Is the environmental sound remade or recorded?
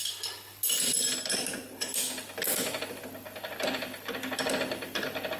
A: recorded